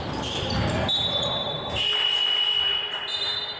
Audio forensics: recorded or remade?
recorded